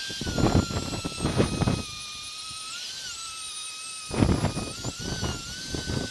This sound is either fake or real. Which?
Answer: real